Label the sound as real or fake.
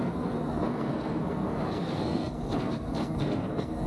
fake